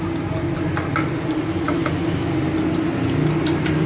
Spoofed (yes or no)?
no